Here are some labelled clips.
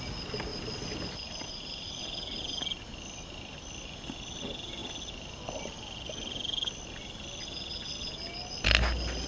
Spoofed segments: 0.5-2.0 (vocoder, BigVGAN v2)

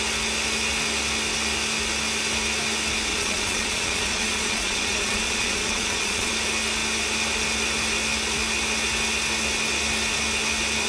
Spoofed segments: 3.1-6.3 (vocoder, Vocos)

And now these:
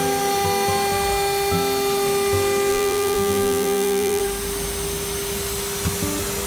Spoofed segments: 2.7-4.2 (vocoder, BigVGAN v2)

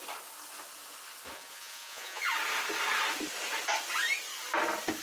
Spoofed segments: 1.3-2.2 (vocoder, Vocos)

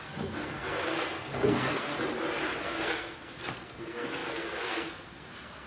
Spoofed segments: 0.0-1.9 (codec, SNAC); 2.6-5.7